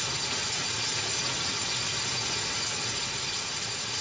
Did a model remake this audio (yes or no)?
no